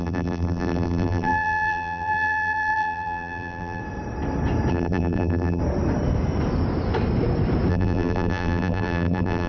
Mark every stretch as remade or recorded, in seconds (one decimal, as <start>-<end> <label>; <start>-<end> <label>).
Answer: 0.0-3.8 remade; 3.8-4.7 recorded; 4.7-5.6 remade; 5.6-7.7 recorded; 7.7-9.5 remade